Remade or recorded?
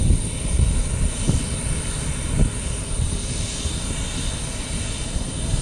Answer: recorded